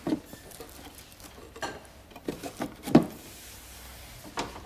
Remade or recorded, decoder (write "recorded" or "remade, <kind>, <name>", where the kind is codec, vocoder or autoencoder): recorded